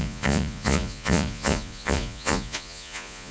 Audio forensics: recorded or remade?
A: remade